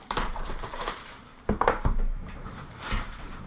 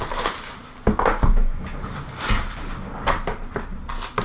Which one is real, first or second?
second